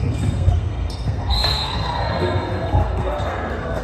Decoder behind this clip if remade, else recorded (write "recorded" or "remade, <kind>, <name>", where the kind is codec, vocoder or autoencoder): remade, codec, SNAC